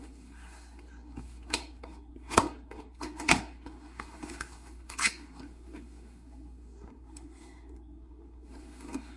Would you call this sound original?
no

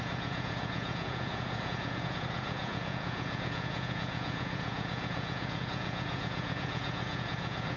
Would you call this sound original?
no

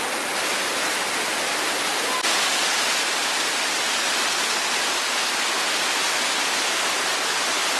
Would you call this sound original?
yes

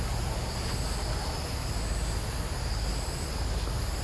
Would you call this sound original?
yes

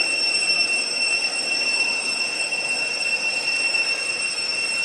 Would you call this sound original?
yes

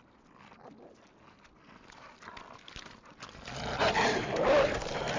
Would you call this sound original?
yes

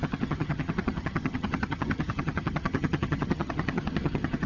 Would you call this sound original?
no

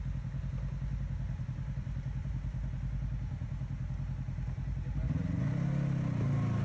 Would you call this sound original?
yes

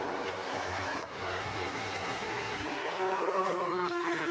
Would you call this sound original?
no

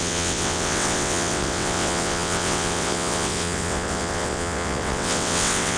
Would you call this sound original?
no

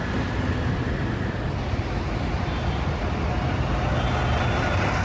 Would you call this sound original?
yes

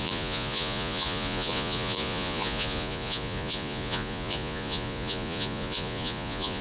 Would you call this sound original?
no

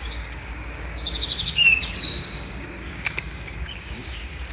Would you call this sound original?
no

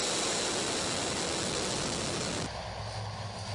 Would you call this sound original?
yes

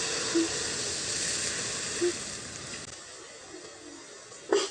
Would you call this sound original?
yes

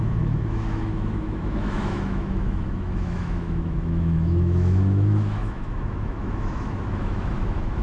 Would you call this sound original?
no